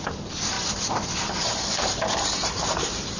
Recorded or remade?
recorded